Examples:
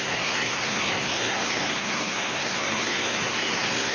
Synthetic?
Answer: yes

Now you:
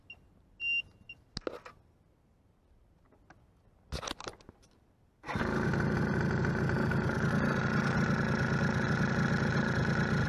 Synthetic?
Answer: no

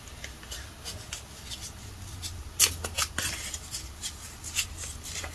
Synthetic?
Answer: no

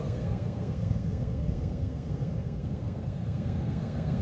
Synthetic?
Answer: yes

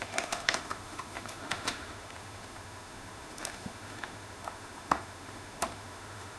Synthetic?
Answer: yes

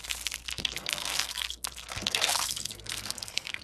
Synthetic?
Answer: yes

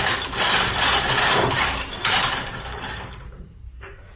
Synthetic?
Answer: yes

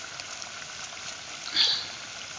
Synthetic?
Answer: no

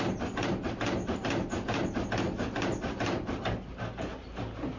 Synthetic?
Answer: no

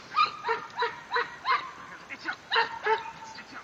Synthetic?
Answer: no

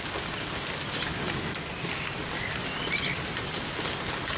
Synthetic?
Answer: no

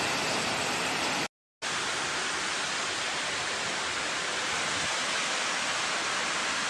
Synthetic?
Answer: no